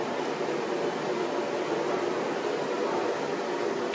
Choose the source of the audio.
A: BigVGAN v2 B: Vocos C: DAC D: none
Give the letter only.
D